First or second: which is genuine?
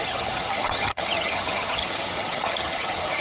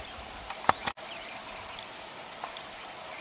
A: second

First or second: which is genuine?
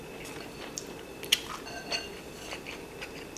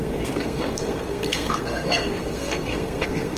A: first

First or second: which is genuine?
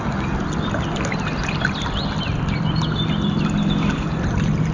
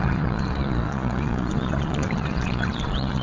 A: first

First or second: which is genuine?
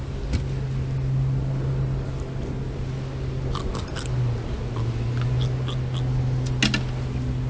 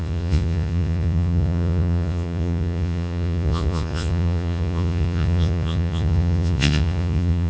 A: first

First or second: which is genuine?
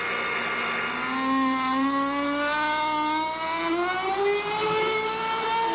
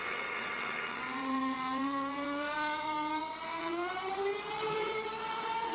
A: first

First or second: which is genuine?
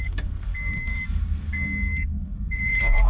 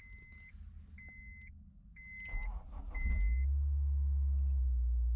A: second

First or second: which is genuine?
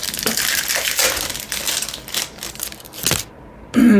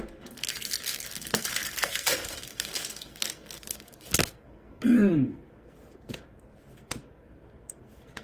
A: first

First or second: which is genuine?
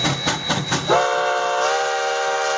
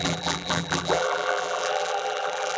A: first